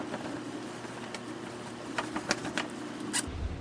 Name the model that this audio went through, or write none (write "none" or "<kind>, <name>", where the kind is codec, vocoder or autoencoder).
none